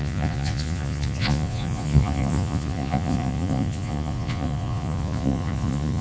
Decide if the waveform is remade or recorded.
remade